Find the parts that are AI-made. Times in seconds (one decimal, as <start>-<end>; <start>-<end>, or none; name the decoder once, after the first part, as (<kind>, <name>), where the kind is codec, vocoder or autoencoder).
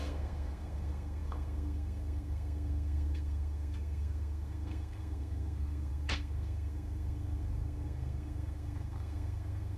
0.0-9.8 (codec, SNAC)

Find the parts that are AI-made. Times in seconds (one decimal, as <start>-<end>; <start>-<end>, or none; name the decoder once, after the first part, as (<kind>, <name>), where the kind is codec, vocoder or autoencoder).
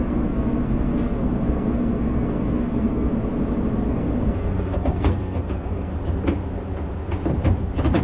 0.0-3.1 (codec, SNAC); 3.9-5.9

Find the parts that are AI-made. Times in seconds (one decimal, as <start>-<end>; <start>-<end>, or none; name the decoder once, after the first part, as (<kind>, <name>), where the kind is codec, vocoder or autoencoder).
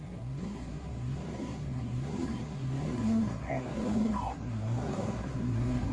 0.0-5.9 (codec, SNAC)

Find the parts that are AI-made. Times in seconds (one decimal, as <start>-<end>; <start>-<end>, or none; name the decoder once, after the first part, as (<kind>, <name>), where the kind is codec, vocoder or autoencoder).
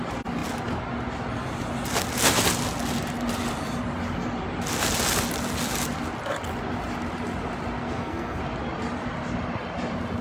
7.8-8.4 (codec, SNAC)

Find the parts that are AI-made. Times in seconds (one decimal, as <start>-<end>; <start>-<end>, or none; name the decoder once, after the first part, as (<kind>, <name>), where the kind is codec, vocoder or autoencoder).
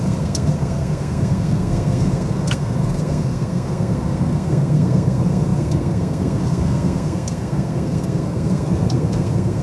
0.0-9.6 (codec, SNAC)